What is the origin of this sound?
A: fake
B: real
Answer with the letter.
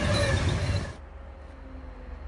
B